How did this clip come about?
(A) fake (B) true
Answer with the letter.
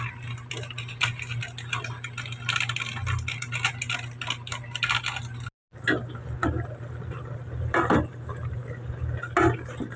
B